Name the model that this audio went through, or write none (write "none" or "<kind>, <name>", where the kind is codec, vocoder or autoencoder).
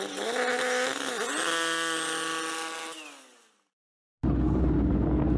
none